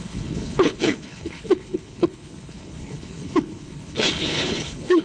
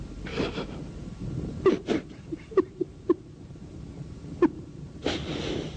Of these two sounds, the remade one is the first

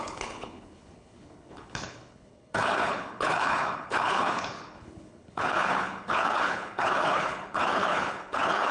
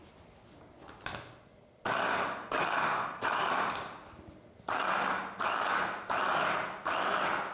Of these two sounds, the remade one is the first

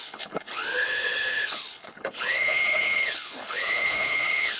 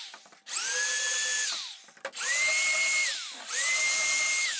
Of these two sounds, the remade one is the first